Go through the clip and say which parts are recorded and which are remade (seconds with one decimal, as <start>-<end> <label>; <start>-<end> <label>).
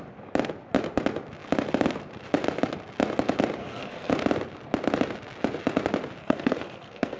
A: 0.0-3.6 recorded; 3.6-4.1 remade; 4.1-6.2 recorded; 6.2-7.2 remade